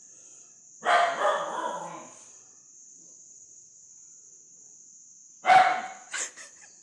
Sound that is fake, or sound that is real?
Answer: real